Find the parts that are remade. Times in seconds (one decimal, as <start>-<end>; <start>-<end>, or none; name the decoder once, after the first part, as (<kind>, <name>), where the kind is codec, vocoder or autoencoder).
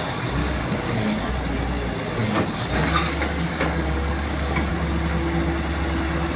0.4-1.3 (codec, DAC); 2.2-4.7